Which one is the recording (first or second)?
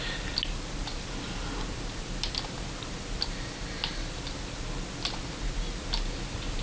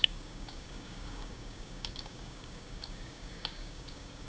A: first